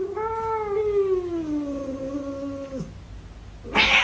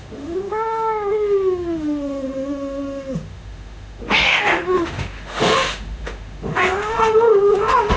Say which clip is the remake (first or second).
second